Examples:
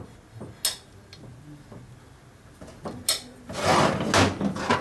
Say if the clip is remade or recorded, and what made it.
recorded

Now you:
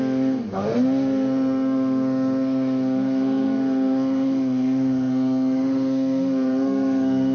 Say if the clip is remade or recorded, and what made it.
remade, codec, SNAC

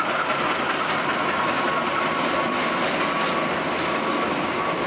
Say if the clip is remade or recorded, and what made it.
recorded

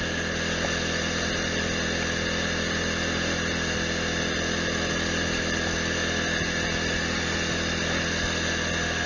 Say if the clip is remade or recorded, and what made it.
recorded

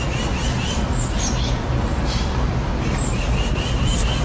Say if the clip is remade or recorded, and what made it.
recorded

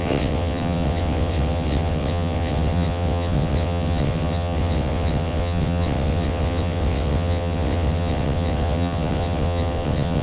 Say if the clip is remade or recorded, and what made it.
remade, vocoder, WaveNeXt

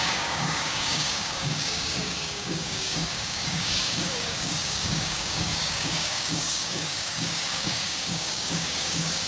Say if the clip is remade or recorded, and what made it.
remade, codec, DAC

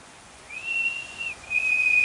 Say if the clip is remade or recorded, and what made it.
remade, vocoder, Vocos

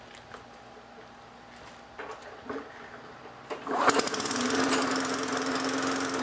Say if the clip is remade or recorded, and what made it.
recorded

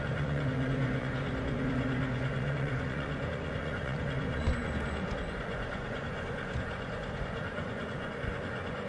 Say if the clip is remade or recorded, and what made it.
remade, vocoder, Vocos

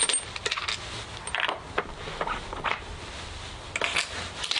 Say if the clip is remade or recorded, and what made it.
recorded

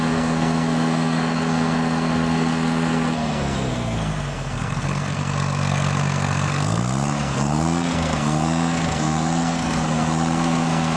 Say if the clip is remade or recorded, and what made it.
remade, codec, SNAC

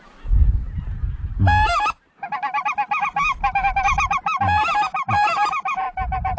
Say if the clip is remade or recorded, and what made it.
recorded